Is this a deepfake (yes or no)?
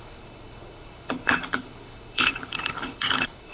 yes